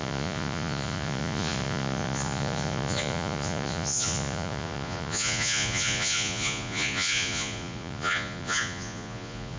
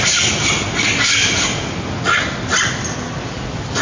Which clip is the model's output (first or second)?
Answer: first